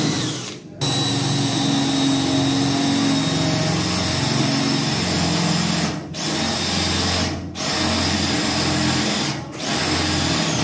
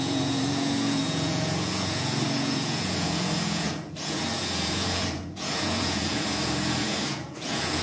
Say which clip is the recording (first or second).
first